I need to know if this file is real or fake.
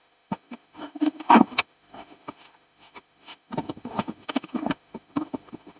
fake